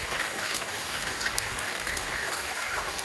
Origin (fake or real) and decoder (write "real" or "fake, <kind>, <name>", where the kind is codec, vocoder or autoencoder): fake, codec, DAC